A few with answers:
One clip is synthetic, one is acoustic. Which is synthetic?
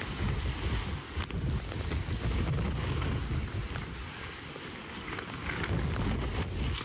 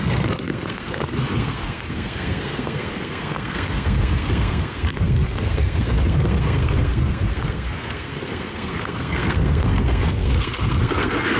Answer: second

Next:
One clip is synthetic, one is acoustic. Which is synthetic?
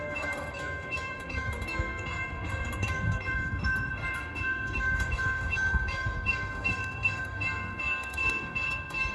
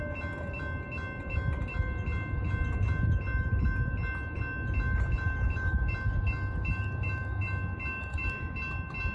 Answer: first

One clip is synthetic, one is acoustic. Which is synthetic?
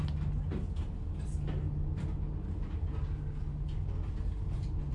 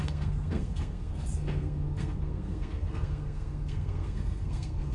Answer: second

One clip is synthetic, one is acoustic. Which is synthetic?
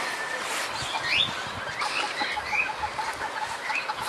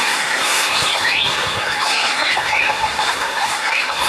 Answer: second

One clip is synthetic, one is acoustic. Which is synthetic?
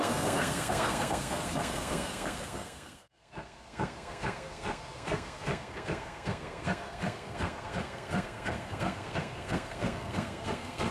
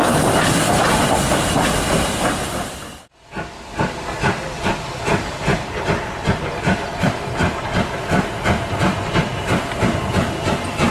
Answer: first